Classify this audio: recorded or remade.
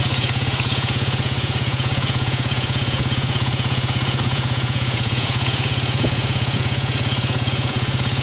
remade